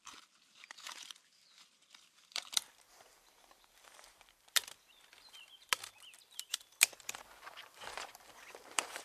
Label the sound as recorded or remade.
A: remade